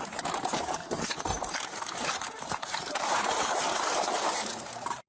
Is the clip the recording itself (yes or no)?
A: no